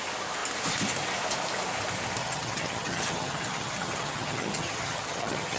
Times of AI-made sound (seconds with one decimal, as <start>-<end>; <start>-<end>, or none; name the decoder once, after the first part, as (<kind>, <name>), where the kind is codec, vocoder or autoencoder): 2.2-5.6 (vocoder, HiFi-GAN)